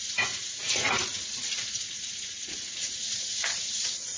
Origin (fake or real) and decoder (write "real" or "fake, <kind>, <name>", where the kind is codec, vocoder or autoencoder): fake, vocoder, Vocos